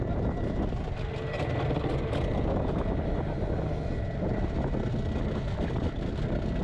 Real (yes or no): yes